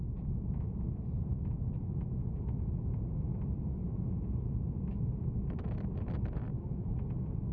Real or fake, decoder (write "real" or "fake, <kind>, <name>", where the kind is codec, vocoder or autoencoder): real